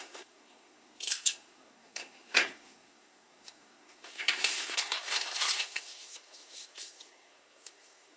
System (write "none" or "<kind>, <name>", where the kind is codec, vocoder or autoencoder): codec, SNAC